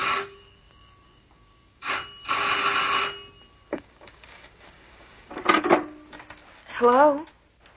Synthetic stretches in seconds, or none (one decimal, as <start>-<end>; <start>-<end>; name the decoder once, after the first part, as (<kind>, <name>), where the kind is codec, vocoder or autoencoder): 0.0-1.9 (codec, DAC); 3.7-5.3